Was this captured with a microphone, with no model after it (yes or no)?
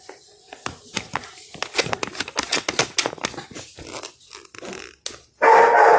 yes